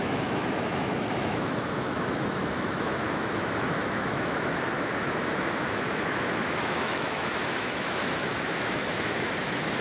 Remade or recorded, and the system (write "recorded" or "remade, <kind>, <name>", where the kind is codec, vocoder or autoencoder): remade, autoencoder, DAC-VAE